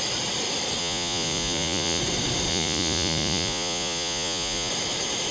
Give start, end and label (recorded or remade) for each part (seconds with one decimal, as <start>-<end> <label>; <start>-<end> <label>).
0.0-0.8 recorded; 0.8-2.0 remade; 2.0-2.5 recorded; 2.5-4.7 remade; 4.7-5.3 recorded